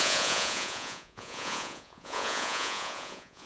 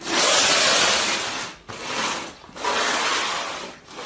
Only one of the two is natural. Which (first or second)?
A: second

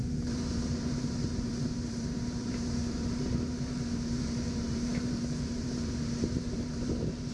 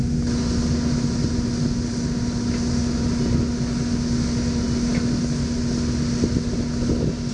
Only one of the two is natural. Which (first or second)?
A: second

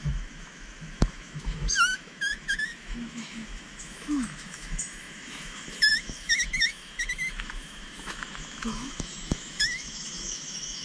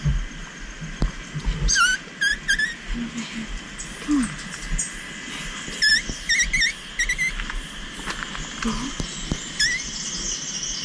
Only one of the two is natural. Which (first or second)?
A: second